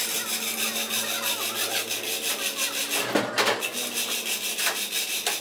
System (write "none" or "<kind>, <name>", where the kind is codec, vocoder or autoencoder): none